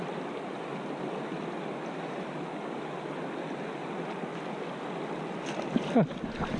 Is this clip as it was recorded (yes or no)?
yes